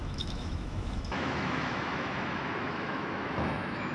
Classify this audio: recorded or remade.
remade